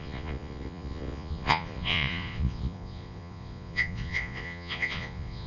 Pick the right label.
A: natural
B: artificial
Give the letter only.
B